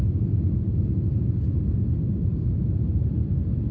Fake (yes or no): no